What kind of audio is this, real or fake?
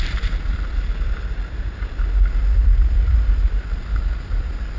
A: real